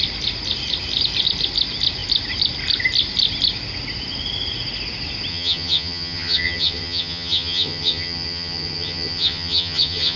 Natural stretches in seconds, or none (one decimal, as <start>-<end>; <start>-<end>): 0.0-5.3